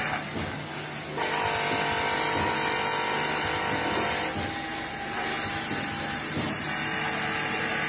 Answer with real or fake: real